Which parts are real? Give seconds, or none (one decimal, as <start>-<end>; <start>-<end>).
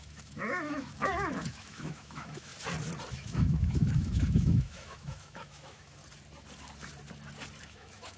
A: 2.5-3.1; 6.0-7.6